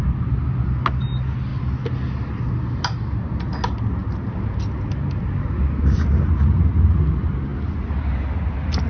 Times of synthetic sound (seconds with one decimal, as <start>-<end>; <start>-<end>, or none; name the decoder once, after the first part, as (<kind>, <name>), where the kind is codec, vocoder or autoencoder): 4.0-4.9 (vocoder, BigVGAN v2)